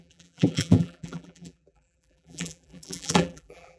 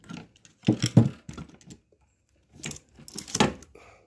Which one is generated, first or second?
first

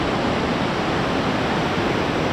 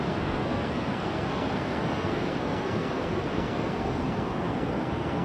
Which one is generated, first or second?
second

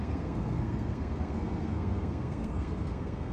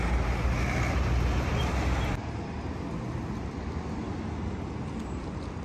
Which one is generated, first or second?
first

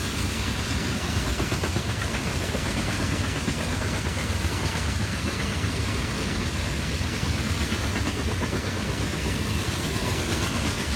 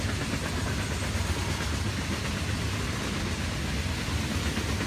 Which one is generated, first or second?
first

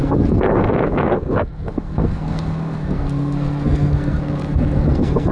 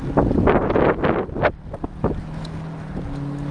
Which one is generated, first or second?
first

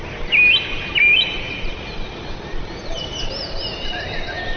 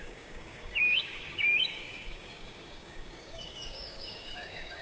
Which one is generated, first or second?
second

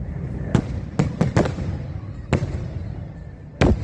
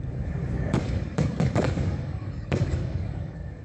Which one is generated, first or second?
second